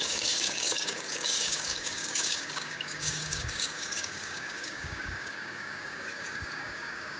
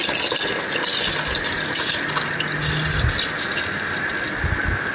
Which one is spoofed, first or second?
first